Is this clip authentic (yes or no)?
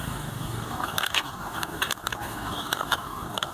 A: no